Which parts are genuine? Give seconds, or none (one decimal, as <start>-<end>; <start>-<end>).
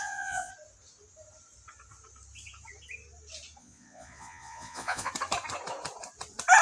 0.5-3.6; 5.1-6.6